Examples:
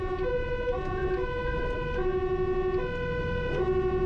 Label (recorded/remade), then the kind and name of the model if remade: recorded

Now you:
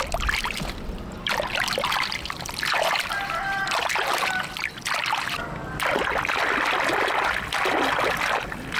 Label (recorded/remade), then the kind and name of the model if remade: recorded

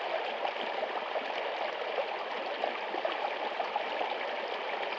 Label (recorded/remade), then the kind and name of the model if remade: recorded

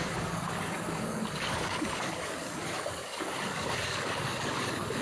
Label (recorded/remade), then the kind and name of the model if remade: remade, codec, DAC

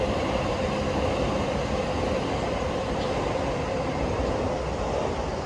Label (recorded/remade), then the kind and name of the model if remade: recorded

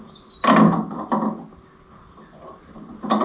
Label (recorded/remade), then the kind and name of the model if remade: recorded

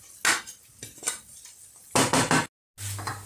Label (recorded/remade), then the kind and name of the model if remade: recorded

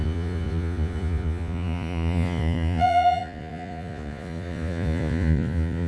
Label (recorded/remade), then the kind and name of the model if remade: remade, vocoder, Vocos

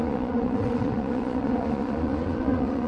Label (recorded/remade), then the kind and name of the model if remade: remade, vocoder, Vocos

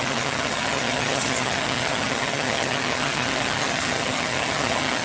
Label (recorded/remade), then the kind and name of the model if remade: remade, vocoder, HiFi-GAN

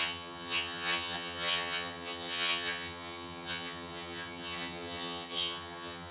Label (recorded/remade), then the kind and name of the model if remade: remade, vocoder, HiFi-GAN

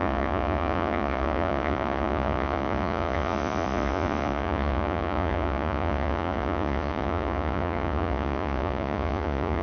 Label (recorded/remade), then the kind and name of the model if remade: remade, vocoder, Vocos